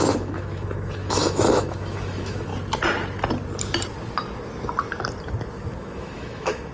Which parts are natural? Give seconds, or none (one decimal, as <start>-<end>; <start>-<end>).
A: 2.5-5.8